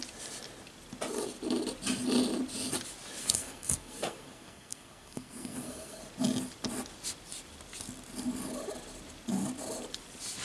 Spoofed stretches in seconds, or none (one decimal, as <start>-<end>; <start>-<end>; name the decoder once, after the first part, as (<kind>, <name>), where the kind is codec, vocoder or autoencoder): 3.2-6.0 (codec, SNAC)